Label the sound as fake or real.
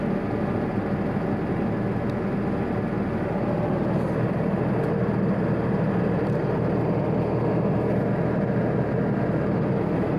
real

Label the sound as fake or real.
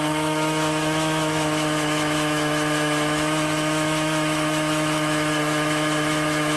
fake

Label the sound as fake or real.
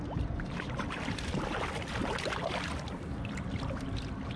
real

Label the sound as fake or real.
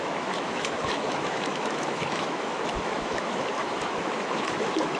fake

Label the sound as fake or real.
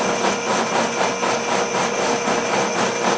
real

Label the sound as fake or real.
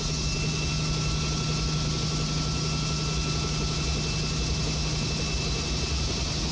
real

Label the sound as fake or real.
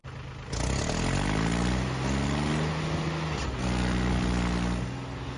real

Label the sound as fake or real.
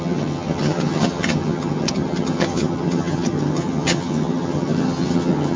fake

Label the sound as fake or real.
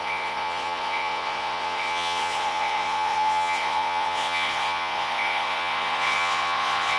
fake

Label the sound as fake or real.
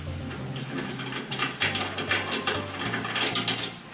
real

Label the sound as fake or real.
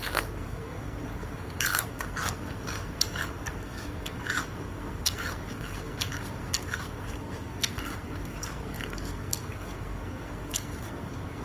fake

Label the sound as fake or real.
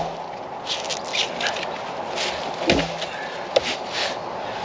real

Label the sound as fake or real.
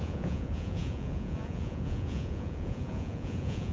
fake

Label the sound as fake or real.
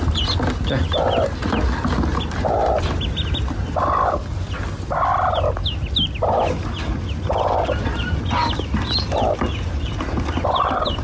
real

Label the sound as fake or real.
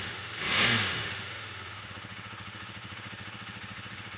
fake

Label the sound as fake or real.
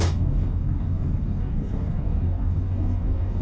fake